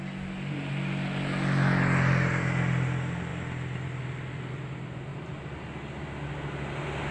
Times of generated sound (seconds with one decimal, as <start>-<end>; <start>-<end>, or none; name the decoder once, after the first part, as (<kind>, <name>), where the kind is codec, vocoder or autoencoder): none